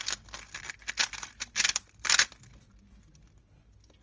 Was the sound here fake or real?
real